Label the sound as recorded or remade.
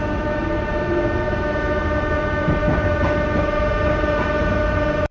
remade